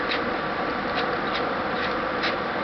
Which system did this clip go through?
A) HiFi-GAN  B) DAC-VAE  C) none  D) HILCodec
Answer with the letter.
C